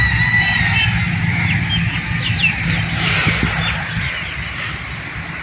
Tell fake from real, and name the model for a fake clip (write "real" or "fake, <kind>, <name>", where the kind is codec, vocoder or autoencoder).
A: real